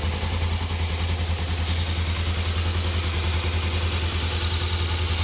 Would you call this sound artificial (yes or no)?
no